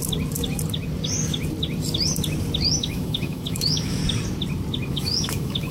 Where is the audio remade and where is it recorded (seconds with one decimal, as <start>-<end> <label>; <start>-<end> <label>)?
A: 0.0-2.8 recorded; 2.8-4.0 remade; 4.0-4.9 recorded; 4.9-5.7 remade